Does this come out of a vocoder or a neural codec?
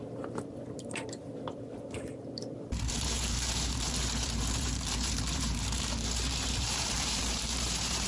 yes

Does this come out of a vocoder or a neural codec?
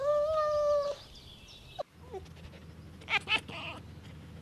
no